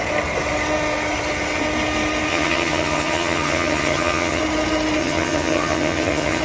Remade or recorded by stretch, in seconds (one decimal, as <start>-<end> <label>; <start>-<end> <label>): 0.0-2.3 recorded; 2.3-4.4 remade; 4.4-5.0 recorded; 5.0-6.4 remade